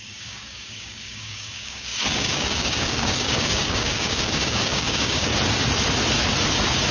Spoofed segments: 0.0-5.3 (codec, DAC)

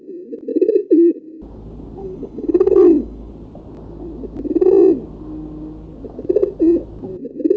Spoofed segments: 0.5-1.2 (codec, DAC); 2.0-3.3

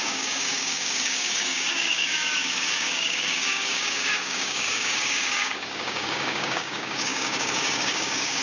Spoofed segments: 0.0-8.4 (codec, DAC)

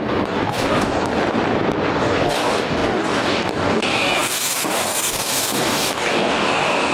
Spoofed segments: 0.0-1.1 (codec, DAC); 1.9-6.9